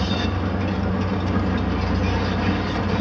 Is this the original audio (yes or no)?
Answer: yes